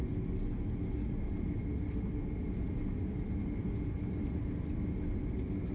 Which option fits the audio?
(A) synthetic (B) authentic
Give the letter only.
B